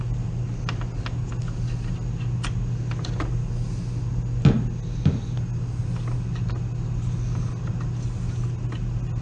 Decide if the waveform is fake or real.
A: real